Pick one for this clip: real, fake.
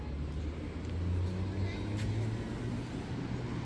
real